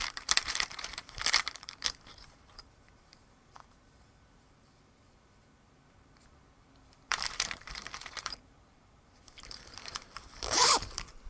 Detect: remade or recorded remade